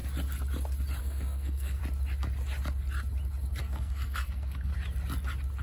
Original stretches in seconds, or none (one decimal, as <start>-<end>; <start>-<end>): 0.0-1.0; 1.8-3.6; 4.7-5.6

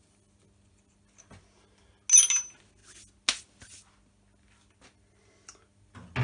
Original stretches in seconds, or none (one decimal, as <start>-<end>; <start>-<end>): 0.0-6.2

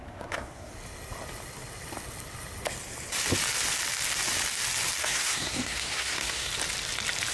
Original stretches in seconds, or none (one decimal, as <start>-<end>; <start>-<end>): 0.7-5.0; 6.5-7.3

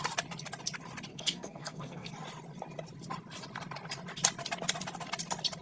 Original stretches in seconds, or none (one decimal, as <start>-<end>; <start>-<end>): 0.0-1.1; 2.1-5.6

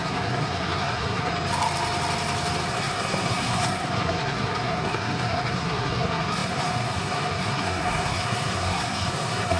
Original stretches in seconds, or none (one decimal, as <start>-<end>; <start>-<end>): 1.3-2.7

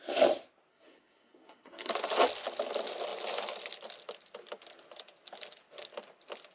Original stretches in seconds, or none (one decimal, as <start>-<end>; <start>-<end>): 0.0-0.7; 1.9-6.5

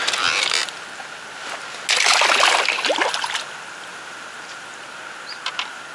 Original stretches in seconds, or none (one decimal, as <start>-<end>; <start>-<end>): 0.0-5.9